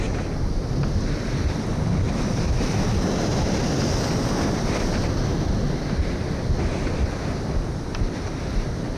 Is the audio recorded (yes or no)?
yes